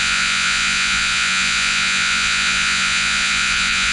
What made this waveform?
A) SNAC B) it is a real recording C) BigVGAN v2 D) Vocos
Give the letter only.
D